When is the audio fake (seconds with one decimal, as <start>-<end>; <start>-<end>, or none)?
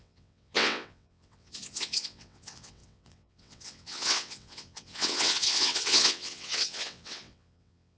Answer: 0.0-8.0